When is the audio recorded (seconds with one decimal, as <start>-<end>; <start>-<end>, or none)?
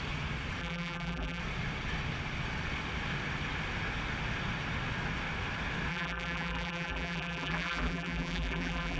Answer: 0.0-0.6; 1.4-5.9